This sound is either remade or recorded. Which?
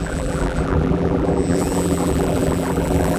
remade